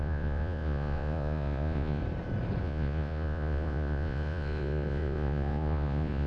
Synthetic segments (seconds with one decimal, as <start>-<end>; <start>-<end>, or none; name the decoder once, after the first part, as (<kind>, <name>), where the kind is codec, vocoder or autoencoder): 0.0-2.0 (vocoder, Vocos); 2.6-6.3